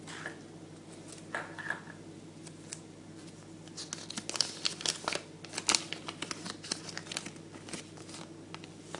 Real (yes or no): yes